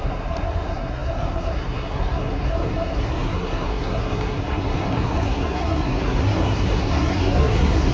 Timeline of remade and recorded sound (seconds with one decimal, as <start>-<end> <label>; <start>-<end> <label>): 0.0-7.9 remade